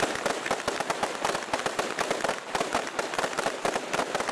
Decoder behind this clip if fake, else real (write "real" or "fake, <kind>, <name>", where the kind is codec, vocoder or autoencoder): real